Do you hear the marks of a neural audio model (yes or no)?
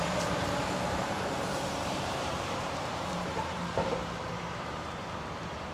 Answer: yes